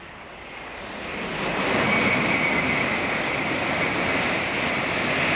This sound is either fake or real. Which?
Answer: real